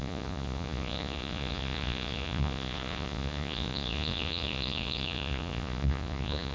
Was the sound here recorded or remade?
remade